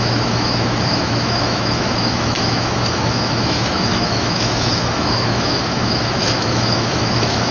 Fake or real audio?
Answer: fake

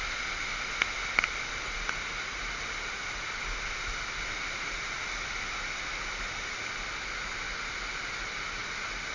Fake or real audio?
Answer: real